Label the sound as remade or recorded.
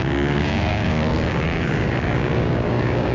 remade